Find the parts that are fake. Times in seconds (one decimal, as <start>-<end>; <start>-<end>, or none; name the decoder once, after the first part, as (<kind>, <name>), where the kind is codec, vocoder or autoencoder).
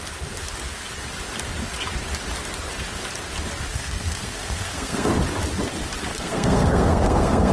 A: 3.7-5.1 (codec, SNAC); 6.1-7.5